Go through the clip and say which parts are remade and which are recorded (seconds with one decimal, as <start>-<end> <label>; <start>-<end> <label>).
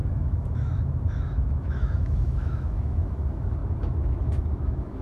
0.0-5.0 remade